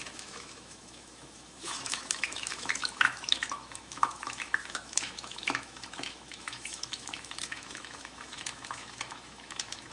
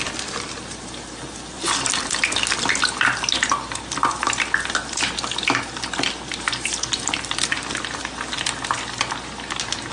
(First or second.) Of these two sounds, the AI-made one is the first